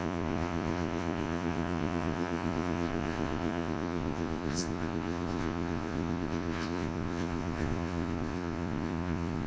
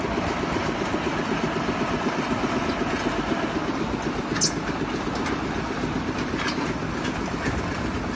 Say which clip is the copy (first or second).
first